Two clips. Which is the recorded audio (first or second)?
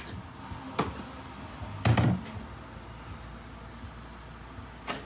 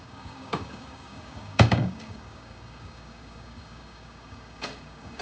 first